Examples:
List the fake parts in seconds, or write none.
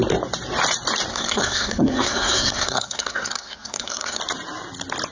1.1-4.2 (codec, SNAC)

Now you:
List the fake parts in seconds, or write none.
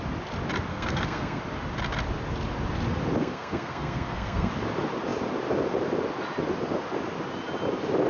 0.7-1.4 (codec, SNAC); 3.2-4.5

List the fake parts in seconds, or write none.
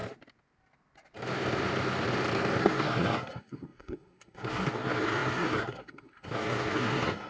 2.6-7.3 (codec, SNAC)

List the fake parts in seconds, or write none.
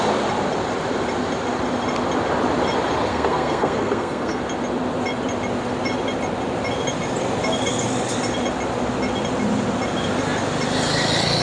3.1-4.4 (codec, SNAC)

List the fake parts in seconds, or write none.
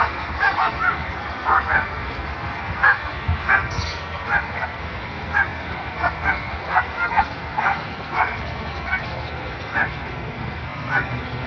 0.0-11.5 (codec, SNAC)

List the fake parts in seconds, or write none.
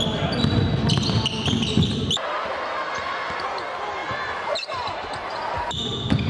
none